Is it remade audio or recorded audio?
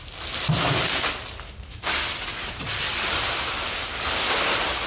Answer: recorded